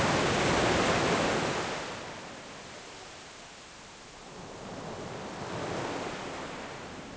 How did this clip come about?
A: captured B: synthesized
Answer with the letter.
A